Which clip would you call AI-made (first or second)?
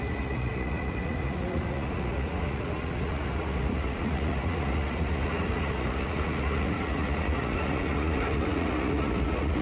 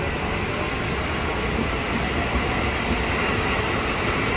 first